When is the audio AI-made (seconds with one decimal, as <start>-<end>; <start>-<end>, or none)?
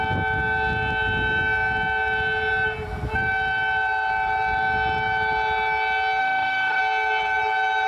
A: 6.2-6.8